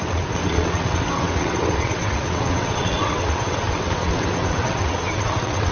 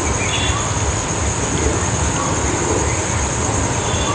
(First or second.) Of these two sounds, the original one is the second